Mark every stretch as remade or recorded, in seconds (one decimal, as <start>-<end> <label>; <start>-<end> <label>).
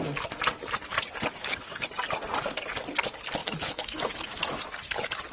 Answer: 0.0-1.4 recorded; 1.4-1.9 remade; 1.9-3.4 recorded; 3.4-4.6 remade; 4.6-5.3 recorded